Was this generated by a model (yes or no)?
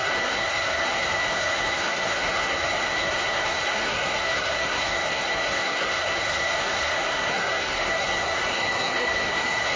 yes